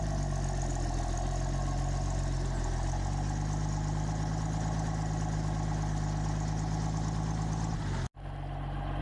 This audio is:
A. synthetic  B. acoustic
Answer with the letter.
B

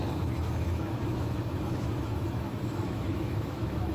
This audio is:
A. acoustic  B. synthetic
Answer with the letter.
B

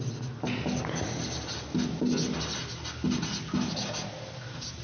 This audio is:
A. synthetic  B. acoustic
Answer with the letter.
B